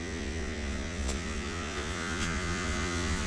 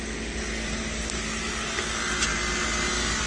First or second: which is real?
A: second